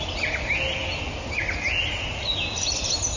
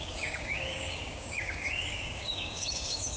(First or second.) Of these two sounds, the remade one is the second